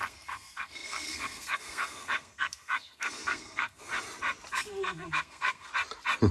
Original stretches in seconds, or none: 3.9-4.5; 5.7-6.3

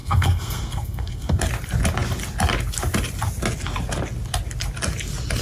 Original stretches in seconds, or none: 1.4-5.4